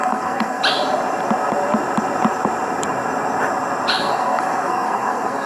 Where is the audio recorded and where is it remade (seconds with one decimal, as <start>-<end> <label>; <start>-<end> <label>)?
0.0-0.6 remade; 0.6-3.9 recorded; 3.9-5.5 remade